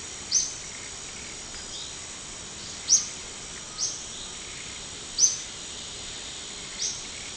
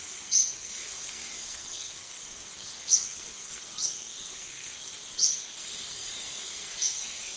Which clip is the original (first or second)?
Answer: first